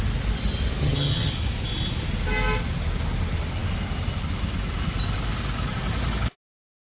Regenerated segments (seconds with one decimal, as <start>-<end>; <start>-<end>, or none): 0.8-1.3